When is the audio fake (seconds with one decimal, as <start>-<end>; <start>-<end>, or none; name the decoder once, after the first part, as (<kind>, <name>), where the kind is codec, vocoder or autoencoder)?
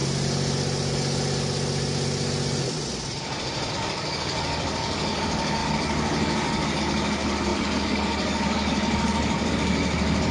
3.7-10.3 (codec, DAC)